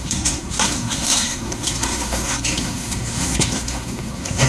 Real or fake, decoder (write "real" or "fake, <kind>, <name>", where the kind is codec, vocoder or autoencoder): fake, codec, SNAC